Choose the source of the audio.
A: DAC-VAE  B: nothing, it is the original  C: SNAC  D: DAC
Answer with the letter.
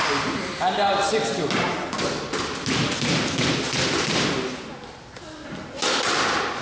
B